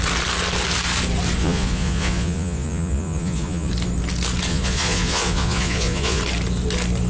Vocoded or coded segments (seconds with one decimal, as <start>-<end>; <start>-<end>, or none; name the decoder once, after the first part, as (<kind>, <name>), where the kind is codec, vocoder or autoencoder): 1.4-3.7 (vocoder, Vocos); 4.5-6.2